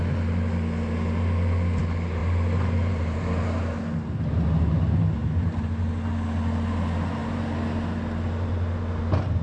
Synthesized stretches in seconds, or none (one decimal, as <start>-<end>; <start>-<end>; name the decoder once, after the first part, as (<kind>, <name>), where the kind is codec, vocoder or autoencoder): 2.2-3.8 (vocoder, BigVGAN v2); 5.2-5.9